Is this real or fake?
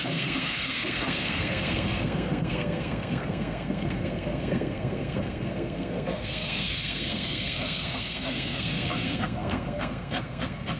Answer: fake